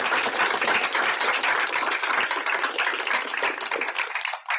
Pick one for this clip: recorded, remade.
recorded